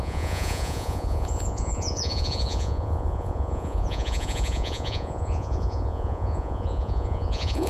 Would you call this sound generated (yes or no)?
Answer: yes